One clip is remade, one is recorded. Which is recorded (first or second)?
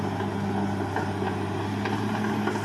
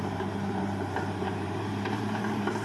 first